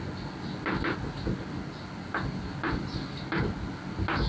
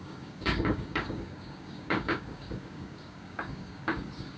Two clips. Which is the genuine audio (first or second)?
first